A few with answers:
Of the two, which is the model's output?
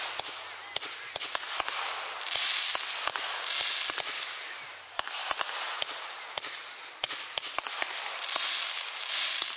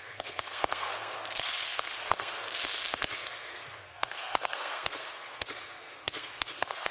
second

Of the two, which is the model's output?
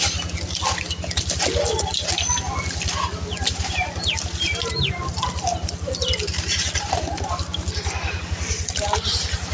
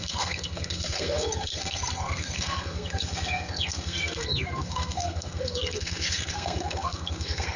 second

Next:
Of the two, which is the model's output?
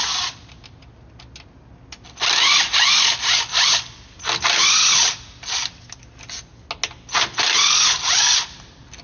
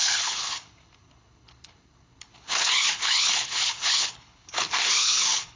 second